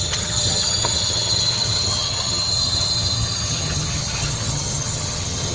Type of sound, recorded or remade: remade